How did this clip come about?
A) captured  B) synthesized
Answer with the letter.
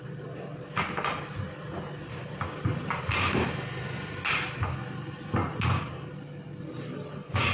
A